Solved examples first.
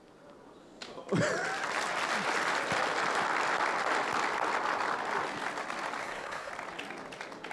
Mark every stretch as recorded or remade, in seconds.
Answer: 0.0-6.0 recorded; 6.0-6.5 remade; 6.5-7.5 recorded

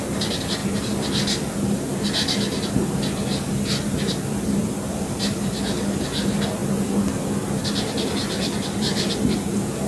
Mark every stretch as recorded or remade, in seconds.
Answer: 0.0-9.9 recorded

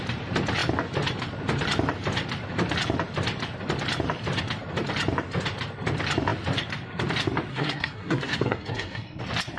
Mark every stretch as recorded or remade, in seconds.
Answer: 0.0-7.5 recorded; 7.5-9.2 remade; 9.2-9.6 recorded

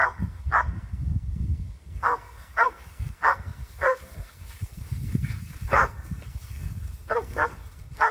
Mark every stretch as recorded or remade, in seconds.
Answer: 0.0-8.1 remade

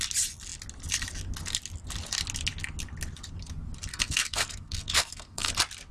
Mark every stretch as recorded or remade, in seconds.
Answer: 0.0-3.9 recorded; 3.9-5.5 remade; 5.5-5.9 recorded

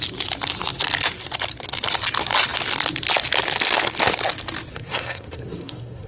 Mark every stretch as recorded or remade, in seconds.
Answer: 0.0-4.7 recorded; 4.7-6.1 remade